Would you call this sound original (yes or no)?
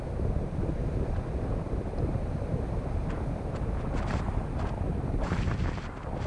yes